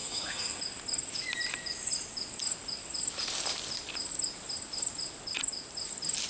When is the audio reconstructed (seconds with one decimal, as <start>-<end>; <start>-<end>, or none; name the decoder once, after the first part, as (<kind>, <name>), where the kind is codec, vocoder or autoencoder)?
0.0-0.6 (codec, SNAC)